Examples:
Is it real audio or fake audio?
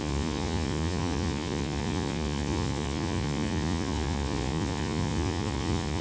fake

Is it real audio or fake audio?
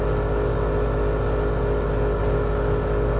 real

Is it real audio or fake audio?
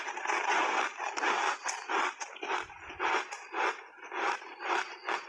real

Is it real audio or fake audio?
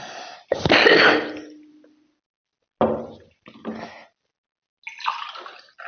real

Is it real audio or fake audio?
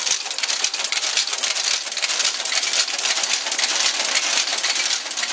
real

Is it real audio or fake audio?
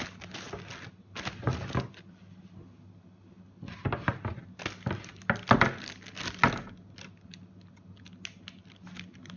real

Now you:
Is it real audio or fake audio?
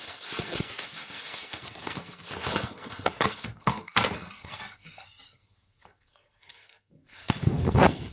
fake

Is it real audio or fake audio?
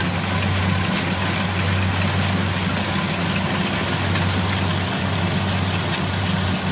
real